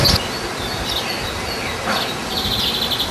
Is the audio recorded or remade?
recorded